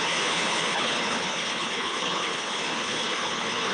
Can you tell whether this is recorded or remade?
remade